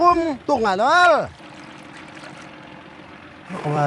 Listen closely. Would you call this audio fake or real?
fake